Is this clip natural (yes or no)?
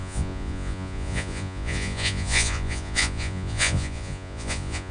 no